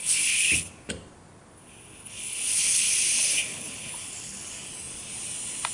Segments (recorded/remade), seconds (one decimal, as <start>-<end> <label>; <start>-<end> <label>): 0.0-0.7 remade; 0.7-2.0 recorded; 2.0-3.0 remade; 3.0-3.5 recorded; 3.5-4.5 remade; 4.5-5.7 recorded